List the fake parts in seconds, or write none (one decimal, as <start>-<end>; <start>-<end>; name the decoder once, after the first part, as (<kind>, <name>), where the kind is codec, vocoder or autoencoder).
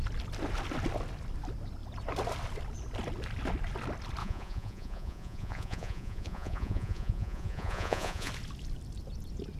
4.2-8.3 (vocoder, Vocos)